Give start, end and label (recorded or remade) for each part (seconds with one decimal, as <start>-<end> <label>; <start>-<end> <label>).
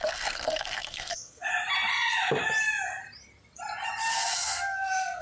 0.0-1.5 remade; 1.5-4.1 recorded; 4.1-5.2 remade